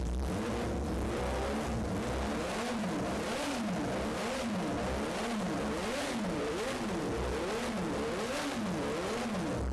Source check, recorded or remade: recorded